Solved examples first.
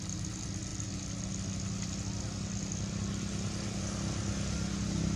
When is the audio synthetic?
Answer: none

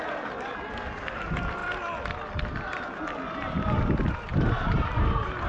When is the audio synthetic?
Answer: none

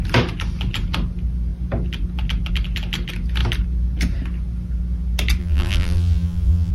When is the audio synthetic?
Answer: 5.4-6.7 (vocoder, BigVGAN v2)

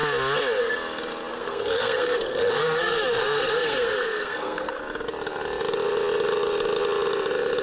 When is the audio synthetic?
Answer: 1.3-4.8 (codec, SNAC)